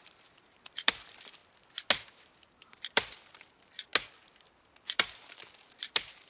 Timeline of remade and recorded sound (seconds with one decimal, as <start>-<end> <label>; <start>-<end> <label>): 0.0-1.4 remade; 1.4-2.1 recorded; 2.1-3.9 remade; 3.9-4.6 recorded; 4.6-6.3 remade